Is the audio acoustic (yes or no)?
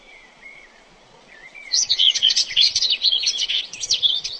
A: no